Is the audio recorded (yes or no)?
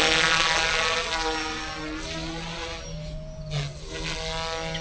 yes